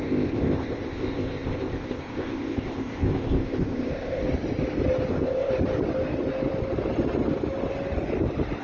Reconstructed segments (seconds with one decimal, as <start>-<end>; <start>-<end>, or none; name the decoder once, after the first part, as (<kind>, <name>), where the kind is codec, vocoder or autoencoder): 0.0-4.2 (codec, ZipCodec); 5.1-5.5